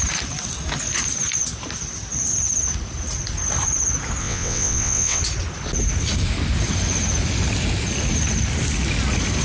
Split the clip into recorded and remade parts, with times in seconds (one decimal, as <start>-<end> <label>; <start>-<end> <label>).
0.0-4.2 recorded; 4.2-5.2 remade; 5.2-9.4 recorded